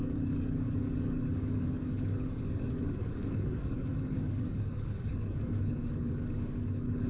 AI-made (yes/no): yes